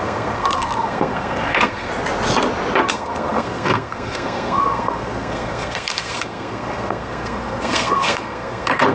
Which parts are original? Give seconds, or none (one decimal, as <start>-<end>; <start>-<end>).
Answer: 1.9-2.9